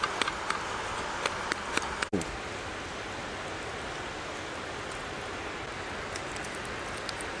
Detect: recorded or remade recorded